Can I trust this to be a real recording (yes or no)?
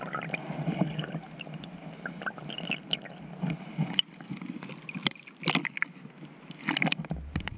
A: yes